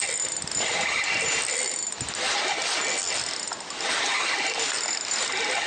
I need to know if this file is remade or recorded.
recorded